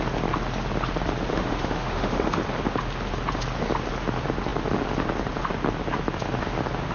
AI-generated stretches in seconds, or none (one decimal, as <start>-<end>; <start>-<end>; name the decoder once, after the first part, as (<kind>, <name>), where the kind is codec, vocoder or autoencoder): 1.3-2.4 (autoencoder, DAC-VAE)